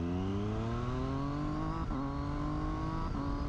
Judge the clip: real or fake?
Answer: real